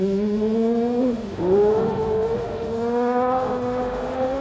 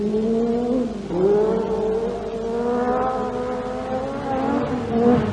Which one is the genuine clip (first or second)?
second